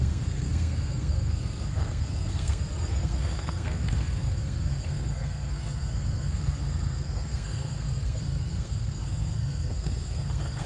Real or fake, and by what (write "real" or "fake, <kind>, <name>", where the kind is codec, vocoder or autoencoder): fake, codec, SNAC